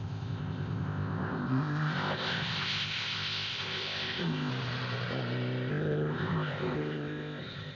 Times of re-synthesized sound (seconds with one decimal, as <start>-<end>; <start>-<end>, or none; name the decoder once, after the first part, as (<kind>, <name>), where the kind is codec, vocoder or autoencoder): 0.0-4.5 (codec, ZipCodec); 5.7-7.7